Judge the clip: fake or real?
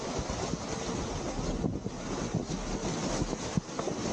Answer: real